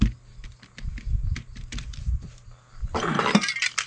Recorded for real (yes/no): yes